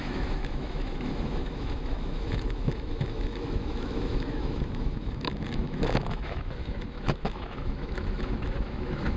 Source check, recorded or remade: remade